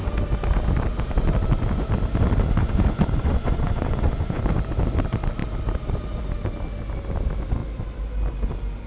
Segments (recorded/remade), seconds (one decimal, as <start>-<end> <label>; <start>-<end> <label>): 0.0-2.6 recorded; 2.6-4.4 remade; 4.4-8.9 recorded

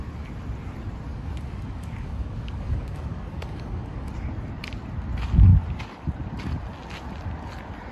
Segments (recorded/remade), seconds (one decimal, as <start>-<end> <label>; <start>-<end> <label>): 0.0-1.1 recorded; 1.1-4.1 remade; 4.1-7.9 recorded

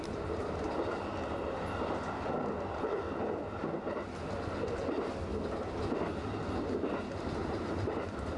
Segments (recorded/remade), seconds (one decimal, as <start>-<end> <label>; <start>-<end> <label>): 0.0-7.4 recorded; 7.4-8.4 remade

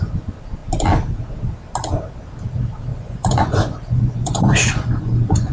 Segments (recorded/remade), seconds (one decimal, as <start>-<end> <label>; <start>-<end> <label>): 0.0-2.9 recorded; 2.9-5.5 remade

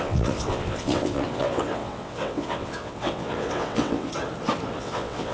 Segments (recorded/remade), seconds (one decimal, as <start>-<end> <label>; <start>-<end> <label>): 0.0-4.1 remade; 4.1-4.8 recorded; 4.8-5.3 remade

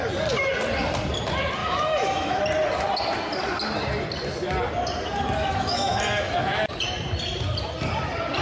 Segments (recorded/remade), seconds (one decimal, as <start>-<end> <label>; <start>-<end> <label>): 0.0-1.6 recorded; 1.6-2.4 remade; 2.4-5.4 recorded; 5.4-6.6 remade; 6.6-8.4 recorded

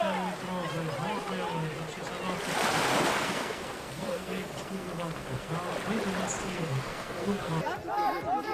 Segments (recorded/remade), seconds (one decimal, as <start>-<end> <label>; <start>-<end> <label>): 0.0-3.1 recorded; 3.1-5.5 remade; 5.5-6.4 recorded; 6.4-7.5 remade; 7.5-8.5 recorded